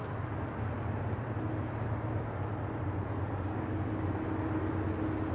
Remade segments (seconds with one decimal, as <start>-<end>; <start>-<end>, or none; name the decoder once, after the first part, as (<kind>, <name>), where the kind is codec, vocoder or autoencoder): 0.0-1.4 (vocoder, BigVGAN v2)